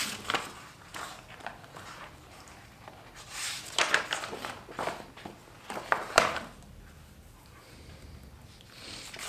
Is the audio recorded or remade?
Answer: recorded